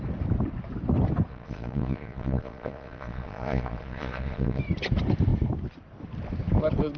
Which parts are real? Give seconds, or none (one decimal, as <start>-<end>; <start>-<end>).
0.0-1.3; 4.6-7.0